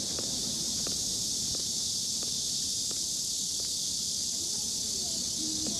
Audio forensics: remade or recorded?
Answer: remade